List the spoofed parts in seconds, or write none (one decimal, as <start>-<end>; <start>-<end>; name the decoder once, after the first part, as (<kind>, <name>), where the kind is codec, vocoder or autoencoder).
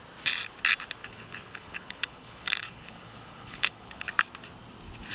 1.0-4.1 (codec, HILCodec)